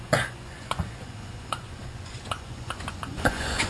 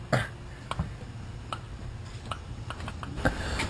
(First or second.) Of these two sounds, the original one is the second